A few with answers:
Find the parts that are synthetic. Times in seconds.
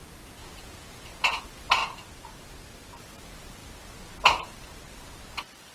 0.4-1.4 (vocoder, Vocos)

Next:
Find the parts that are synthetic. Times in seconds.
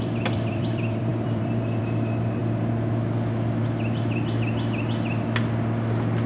0.0-2.4 (vocoder, BigVGAN v2)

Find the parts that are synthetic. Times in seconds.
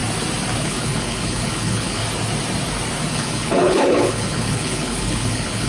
0.6-2.0 (codec, HILCodec); 3.1-5.7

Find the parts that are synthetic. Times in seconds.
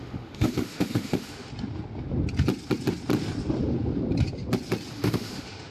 0.0-1.5 (autoencoder, DAC-VAE); 4.9-5.7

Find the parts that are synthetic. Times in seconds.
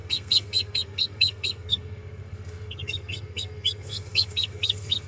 0.0-5.1 (codec, SNAC)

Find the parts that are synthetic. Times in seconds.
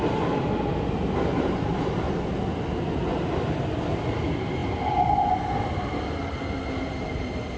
none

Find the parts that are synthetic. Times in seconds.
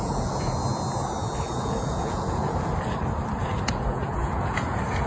0.0-0.6 (vocoder, Vocos); 1.4-2.7; 3.4-5.1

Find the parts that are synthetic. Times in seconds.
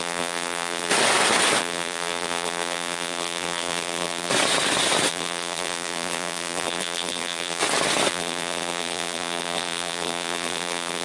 0.0-0.9 (vocoder, BigVGAN v2); 1.6-4.3; 5.1-7.6; 8.1-11.0